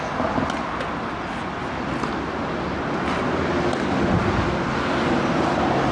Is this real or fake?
real